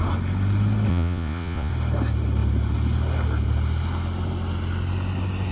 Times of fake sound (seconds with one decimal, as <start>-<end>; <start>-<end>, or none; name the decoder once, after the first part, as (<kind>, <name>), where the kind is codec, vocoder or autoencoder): 0.9-1.7 (vocoder, Vocos)